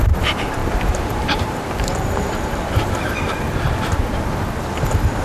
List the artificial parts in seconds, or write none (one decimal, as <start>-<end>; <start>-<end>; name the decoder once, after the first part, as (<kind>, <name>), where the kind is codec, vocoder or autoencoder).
0.6-3.5 (vocoder, BigVGAN v2)